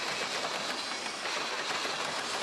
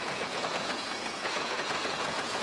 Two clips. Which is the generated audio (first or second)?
second